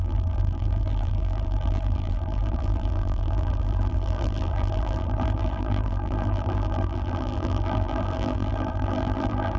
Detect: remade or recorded remade